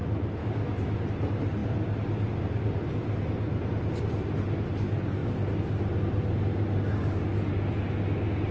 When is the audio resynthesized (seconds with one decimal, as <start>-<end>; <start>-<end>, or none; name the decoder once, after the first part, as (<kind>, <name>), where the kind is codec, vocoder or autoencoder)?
0.4-1.0 (autoencoder, DAC-VAE)